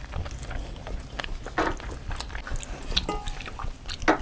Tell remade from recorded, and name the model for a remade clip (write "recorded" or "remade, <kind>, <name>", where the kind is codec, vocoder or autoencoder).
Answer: recorded